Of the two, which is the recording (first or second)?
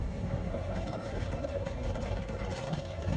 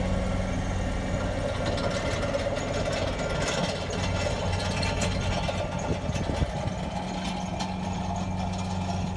second